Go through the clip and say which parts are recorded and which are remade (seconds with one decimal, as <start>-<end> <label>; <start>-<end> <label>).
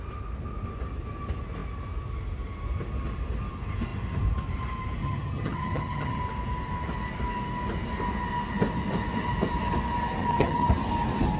0.0-5.0 recorded; 5.0-6.2 remade; 6.2-10.2 recorded; 10.2-10.7 remade; 10.7-11.4 recorded